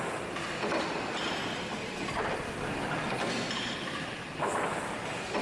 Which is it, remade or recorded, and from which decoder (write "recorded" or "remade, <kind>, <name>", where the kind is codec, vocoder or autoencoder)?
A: recorded